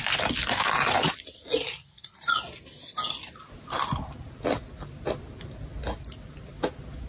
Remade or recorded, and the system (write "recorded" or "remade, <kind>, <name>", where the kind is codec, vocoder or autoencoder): recorded